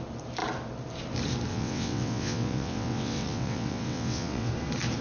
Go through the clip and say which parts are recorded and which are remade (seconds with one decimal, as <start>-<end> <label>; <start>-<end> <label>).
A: 0.0-1.5 recorded; 1.5-4.5 remade; 4.5-5.0 recorded